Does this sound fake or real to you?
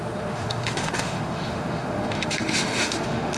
fake